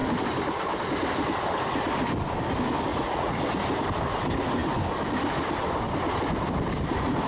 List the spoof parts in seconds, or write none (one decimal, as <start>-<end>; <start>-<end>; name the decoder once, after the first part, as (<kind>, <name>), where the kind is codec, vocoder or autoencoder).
2.9-3.4 (vocoder, Vocos)